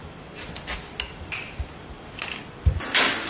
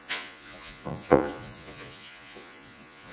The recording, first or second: first